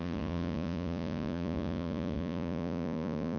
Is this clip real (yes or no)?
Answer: no